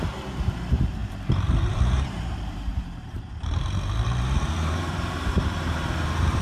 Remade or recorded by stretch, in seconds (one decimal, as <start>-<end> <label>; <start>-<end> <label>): 0.0-6.4 remade